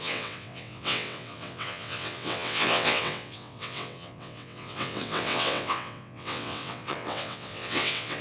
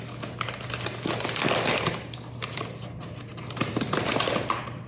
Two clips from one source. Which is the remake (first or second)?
first